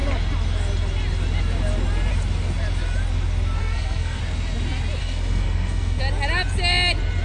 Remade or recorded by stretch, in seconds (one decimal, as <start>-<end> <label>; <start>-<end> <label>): 0.0-3.6 recorded; 3.6-4.2 remade; 4.2-5.0 recorded; 5.0-6.0 remade; 6.0-7.2 recorded